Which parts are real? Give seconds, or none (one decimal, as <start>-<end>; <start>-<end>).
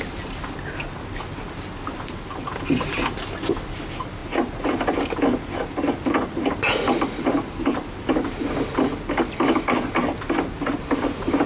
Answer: 0.0-11.5